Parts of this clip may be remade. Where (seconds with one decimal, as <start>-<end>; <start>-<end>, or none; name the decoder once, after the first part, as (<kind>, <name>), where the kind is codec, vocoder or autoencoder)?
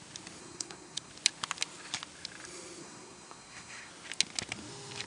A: 0.4-1.1 (codec, SNAC); 2.8-3.9